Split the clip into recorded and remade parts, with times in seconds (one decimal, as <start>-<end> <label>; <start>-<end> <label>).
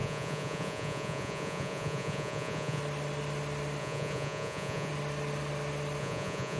0.0-2.8 remade; 2.8-3.8 recorded; 3.8-4.9 remade; 4.9-6.0 recorded; 6.0-6.6 remade